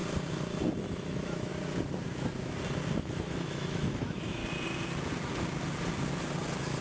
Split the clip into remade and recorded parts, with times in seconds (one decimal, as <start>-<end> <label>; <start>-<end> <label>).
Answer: 0.0-0.8 recorded; 0.8-1.5 remade; 1.5-3.0 recorded; 3.0-4.4 remade; 4.4-6.8 recorded